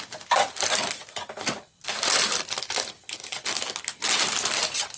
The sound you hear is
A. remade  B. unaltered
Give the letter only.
B